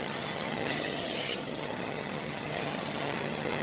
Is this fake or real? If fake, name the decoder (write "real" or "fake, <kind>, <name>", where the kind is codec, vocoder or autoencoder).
fake, vocoder, HiFi-GAN